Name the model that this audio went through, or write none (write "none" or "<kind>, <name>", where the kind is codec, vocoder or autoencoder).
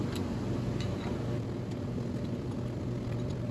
none